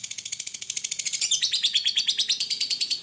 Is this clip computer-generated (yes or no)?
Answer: yes